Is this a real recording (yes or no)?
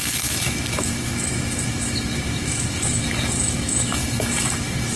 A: no